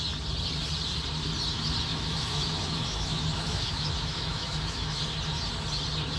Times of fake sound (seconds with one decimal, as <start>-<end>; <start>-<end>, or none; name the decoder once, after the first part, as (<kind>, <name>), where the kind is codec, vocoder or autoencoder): 1.9-5.0 (autoencoder, DAC-VAE)

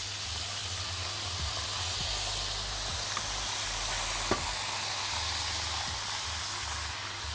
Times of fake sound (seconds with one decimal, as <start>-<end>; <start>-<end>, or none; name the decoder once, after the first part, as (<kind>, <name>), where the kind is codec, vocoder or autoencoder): none

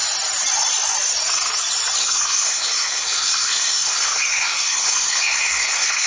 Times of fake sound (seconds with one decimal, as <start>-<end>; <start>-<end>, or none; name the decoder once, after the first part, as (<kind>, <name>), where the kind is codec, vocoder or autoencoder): 2.0-6.1 (codec, SNAC)

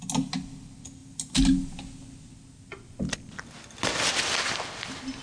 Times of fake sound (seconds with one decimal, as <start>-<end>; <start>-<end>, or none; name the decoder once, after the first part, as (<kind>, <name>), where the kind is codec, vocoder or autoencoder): none

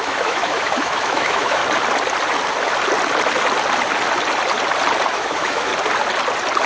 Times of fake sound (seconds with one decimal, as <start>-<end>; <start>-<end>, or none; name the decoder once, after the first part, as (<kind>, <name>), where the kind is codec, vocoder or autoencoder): 0.0-1.6 (autoencoder, DAC-VAE); 5.1-5.7

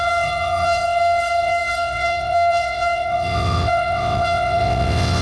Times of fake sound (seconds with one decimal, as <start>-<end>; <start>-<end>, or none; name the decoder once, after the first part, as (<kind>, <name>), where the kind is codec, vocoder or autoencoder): 0.0-5.2 (vocoder, WaveNeXt)

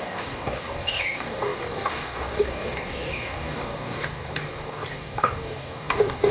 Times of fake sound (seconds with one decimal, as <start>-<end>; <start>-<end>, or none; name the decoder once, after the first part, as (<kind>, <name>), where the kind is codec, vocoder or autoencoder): 0.0-6.3 (codec, DAC)